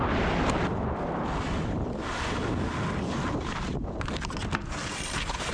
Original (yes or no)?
yes